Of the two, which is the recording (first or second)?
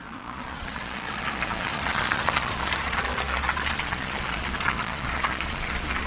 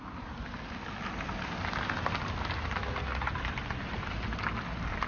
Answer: second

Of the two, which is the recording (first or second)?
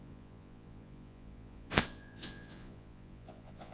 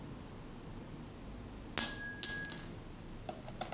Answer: second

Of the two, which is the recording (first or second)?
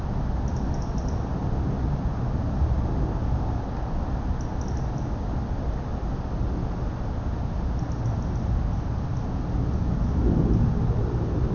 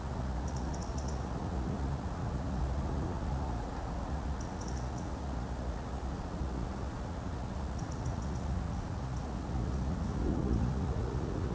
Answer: first